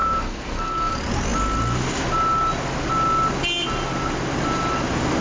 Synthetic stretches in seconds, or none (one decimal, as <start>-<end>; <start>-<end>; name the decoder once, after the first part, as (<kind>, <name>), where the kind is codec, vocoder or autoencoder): 0.0-0.9 (codec, SNAC)